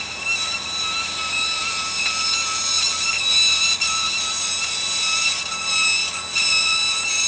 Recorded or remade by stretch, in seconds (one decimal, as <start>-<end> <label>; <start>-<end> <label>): 0.0-7.3 recorded